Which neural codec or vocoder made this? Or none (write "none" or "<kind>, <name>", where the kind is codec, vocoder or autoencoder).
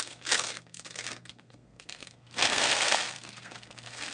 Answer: codec, SNAC